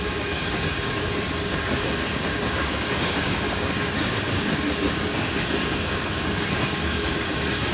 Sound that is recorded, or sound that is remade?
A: remade